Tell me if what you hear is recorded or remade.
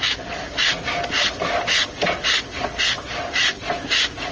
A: recorded